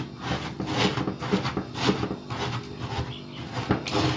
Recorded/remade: recorded